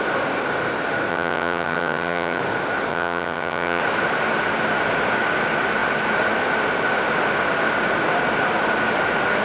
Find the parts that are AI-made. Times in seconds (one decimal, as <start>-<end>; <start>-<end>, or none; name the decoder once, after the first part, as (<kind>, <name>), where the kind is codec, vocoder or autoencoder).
1.1-2.4 (vocoder, HiFi-GAN); 2.9-3.8